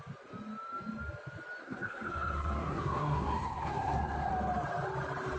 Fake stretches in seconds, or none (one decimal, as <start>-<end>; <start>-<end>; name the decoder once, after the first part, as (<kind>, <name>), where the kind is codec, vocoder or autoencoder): 1.6-4.3 (codec, SNAC)